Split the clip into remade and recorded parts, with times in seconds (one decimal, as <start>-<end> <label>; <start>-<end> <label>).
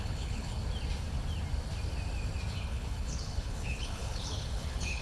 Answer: 0.0-0.6 remade; 0.6-2.5 recorded; 2.5-5.0 remade